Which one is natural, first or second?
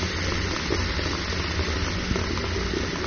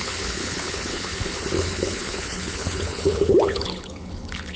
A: first